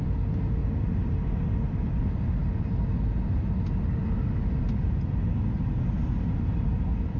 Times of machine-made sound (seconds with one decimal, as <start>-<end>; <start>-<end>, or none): 0.6-2.0

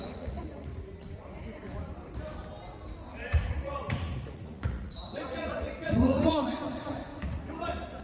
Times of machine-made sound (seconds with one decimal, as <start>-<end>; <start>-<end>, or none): 0.0-0.7; 3.5-8.0

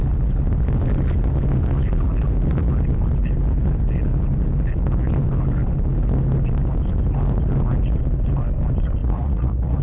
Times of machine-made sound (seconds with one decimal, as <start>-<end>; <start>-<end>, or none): 9.0-9.8

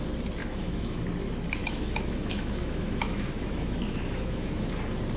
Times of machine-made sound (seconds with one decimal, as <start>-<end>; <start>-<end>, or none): 0.4-1.0; 1.6-4.7